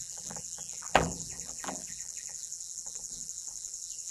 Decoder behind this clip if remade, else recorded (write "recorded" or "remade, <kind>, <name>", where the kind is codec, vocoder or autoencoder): remade, vocoder, BigVGAN v2